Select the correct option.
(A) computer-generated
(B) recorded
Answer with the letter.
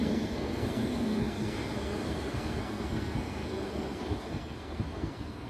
A